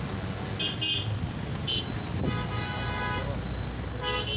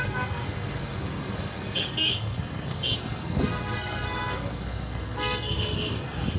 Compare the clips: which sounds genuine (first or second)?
first